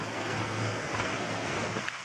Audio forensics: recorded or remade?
remade